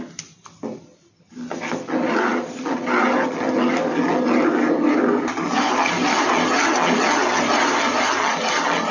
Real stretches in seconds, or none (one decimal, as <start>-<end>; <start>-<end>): 0.0-8.9